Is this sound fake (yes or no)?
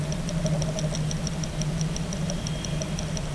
yes